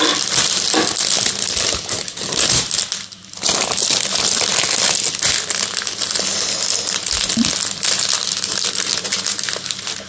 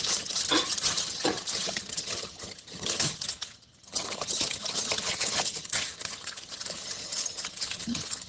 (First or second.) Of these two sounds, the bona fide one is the first